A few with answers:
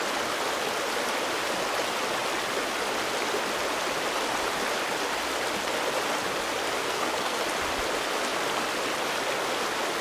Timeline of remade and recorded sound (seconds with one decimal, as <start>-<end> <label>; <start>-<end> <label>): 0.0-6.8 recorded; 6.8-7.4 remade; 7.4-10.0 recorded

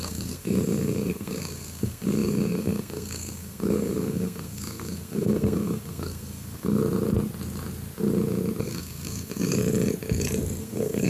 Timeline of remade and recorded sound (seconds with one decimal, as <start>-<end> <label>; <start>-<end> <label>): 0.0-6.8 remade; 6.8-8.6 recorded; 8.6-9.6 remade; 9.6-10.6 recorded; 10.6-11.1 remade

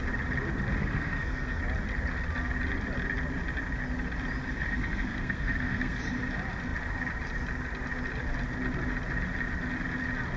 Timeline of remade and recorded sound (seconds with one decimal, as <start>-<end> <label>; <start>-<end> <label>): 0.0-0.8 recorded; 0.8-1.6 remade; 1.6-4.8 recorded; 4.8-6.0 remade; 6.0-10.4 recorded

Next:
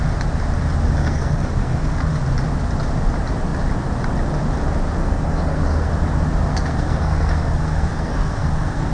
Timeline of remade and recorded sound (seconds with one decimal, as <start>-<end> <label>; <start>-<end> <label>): 0.0-1.0 recorded; 1.0-2.2 remade; 2.2-5.0 recorded; 5.0-5.9 remade; 5.9-6.5 recorded; 6.5-8.9 remade

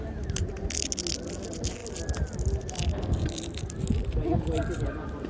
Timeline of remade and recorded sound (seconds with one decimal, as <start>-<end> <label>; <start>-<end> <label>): 0.0-5.3 recorded